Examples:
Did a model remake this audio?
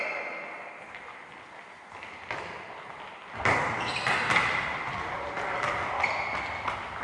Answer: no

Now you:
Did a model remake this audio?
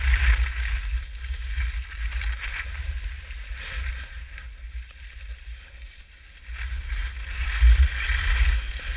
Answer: no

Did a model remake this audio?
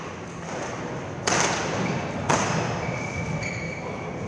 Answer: no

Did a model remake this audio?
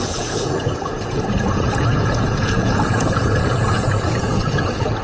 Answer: yes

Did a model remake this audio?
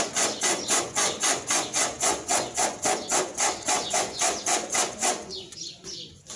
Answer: yes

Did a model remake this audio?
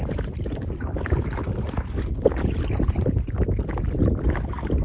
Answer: no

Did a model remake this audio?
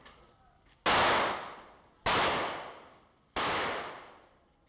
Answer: no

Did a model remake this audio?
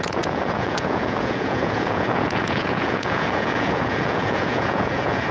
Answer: yes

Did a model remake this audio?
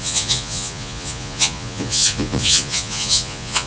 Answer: yes